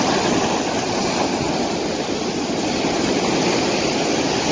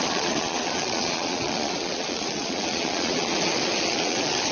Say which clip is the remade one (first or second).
second